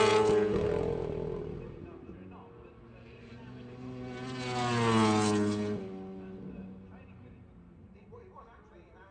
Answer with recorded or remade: recorded